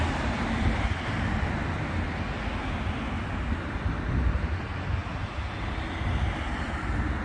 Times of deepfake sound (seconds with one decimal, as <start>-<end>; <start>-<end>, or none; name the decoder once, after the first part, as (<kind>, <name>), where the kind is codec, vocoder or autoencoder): none